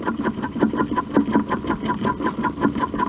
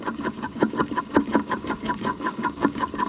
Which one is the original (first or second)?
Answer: first